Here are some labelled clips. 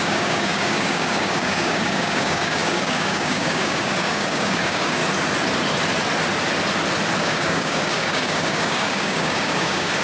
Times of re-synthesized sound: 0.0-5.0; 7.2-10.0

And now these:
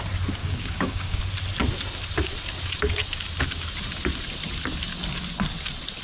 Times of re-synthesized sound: 0.4-1.2

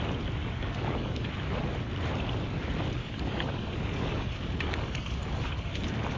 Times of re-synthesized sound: 0.4-1.3; 3.0-5.7